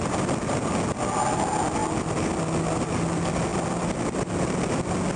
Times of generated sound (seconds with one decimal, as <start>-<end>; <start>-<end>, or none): none